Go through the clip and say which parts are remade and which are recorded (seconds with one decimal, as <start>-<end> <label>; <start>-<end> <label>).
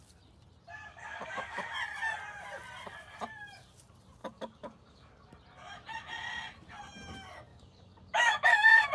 0.0-0.8 recorded; 0.8-1.7 remade; 1.7-4.2 recorded; 4.2-5.3 remade; 5.3-7.5 recorded; 7.5-8.9 remade